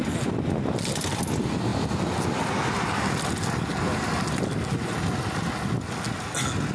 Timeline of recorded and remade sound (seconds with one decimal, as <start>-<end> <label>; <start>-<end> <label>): 0.0-6.7 recorded